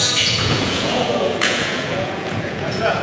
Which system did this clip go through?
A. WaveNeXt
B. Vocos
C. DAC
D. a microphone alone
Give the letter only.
B